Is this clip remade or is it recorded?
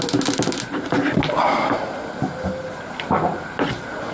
recorded